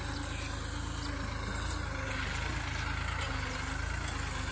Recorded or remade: recorded